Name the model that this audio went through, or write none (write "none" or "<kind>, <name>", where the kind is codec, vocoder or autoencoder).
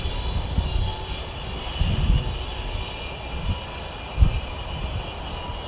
none